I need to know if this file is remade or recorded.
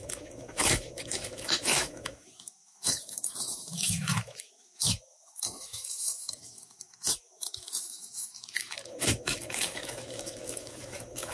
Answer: remade